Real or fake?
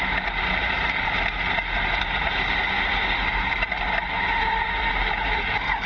real